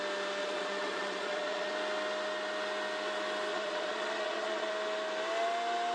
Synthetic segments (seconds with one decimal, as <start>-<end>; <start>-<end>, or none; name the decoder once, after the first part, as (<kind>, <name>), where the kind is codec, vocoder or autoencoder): 0.4-1.7 (vocoder, Vocos); 3.5-4.7

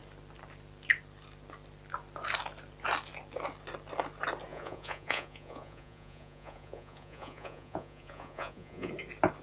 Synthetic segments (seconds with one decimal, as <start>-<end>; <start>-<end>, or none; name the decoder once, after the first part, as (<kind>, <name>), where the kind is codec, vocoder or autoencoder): 4.5-8.9 (vocoder, Vocos)

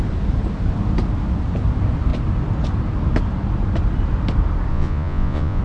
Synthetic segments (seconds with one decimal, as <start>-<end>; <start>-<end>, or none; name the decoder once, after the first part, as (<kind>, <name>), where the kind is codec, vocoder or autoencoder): 4.7-5.6 (vocoder, Vocos)

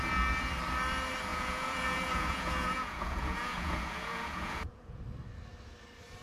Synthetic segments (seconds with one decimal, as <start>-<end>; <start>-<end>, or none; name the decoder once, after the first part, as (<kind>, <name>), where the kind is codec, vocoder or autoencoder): 1.3-5.0 (vocoder, Vocos)

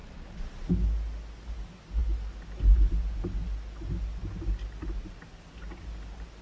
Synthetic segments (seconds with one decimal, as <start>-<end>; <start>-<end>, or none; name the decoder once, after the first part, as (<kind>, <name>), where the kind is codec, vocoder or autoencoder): 0.0-0.7 (vocoder, Vocos)

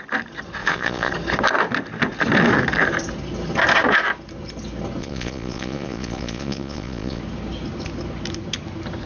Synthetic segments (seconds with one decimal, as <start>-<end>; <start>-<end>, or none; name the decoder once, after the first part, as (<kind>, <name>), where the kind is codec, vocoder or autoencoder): 0.6-1.1 (vocoder, Vocos); 5.0-7.2

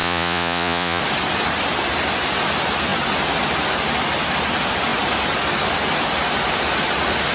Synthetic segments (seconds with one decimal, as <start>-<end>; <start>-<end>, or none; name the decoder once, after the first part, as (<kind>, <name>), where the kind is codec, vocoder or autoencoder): 0.0-1.0 (vocoder, Vocos)

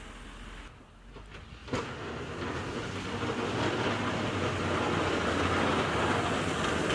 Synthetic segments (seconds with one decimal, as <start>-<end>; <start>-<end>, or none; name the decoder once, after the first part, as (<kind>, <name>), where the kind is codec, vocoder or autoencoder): none